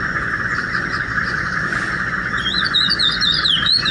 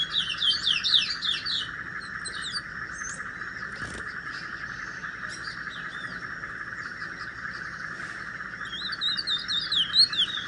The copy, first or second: first